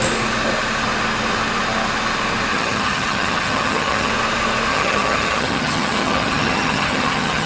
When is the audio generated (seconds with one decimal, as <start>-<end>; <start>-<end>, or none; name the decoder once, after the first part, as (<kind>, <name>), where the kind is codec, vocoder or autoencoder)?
2.5-4.1 (vocoder, HiFi-GAN); 4.7-7.5